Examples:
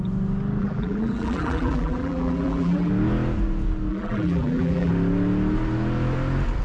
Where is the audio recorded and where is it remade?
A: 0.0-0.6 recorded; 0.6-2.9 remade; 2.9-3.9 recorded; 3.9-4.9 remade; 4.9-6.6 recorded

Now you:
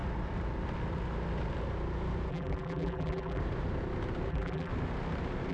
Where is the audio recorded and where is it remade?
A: 0.0-2.3 recorded; 2.3-3.4 remade; 3.4-4.3 recorded; 4.3-4.7 remade; 4.7-5.5 recorded

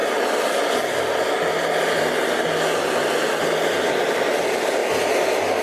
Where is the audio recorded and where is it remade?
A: 0.0-5.6 recorded

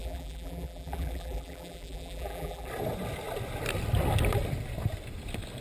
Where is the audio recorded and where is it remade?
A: 0.0-2.7 remade; 2.7-5.6 recorded

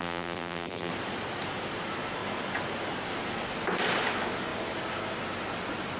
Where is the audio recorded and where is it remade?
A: 0.0-0.9 remade; 0.9-6.0 recorded

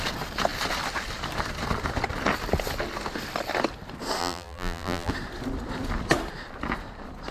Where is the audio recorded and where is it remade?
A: 0.0-4.2 recorded; 4.2-5.1 remade; 5.1-7.3 recorded

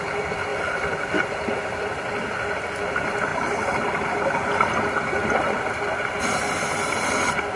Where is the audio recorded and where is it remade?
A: 0.0-0.5 recorded; 0.5-1.1 remade; 1.1-7.6 recorded

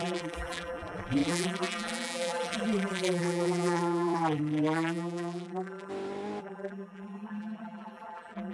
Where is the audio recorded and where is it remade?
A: 0.0-5.9 remade; 5.9-6.4 recorded; 6.4-8.5 remade